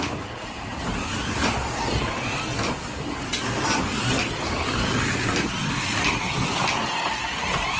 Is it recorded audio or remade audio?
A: recorded